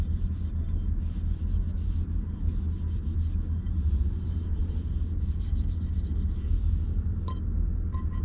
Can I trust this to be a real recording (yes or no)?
yes